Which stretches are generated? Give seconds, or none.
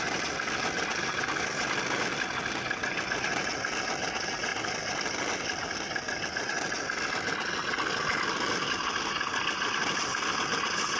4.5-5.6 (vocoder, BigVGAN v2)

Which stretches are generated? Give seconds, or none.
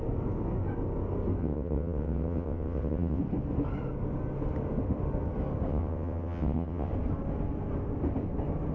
1.4-3.2 (vocoder, WaveNeXt); 5.7-6.9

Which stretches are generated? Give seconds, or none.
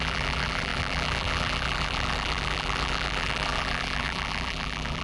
0.0-5.0 (vocoder, BigVGAN v2)